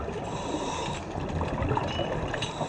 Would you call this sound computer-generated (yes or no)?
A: no